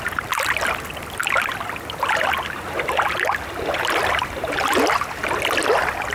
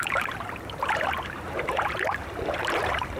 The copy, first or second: second